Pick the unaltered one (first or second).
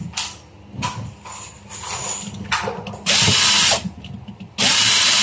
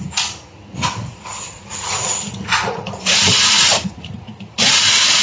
first